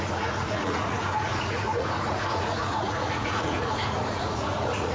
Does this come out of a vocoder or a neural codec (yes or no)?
yes